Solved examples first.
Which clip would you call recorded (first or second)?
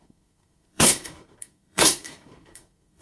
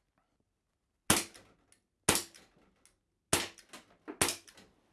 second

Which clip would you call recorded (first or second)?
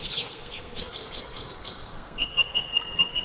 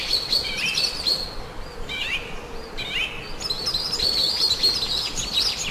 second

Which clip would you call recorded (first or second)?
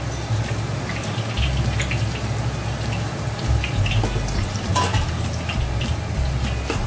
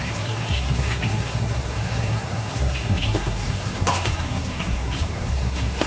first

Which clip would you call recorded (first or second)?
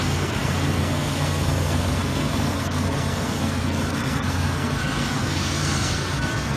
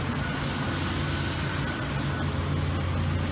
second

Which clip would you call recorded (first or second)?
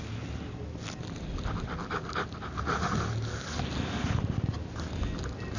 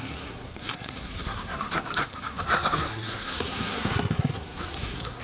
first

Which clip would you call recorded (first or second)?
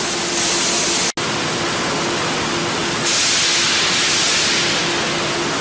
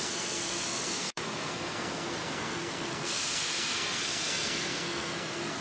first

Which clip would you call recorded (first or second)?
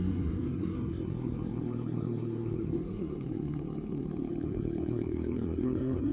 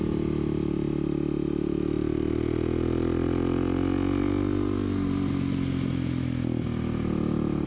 second